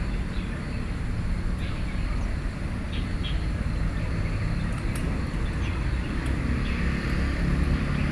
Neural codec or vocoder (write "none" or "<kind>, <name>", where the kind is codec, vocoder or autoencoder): none